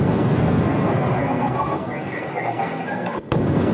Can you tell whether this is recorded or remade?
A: remade